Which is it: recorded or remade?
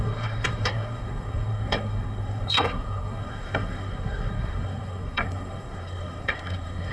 remade